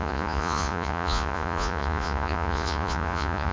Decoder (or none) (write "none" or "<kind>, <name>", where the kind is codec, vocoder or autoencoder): vocoder, Vocos